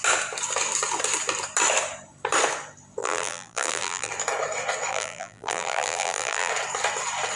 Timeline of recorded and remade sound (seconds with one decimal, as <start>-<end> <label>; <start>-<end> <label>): 0.0-3.0 recorded; 3.0-4.1 remade; 4.1-4.9 recorded; 4.9-6.5 remade; 6.5-7.4 recorded